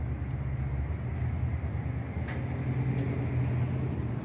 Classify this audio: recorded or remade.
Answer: recorded